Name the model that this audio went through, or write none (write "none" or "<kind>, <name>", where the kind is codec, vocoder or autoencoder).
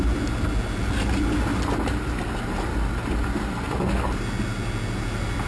none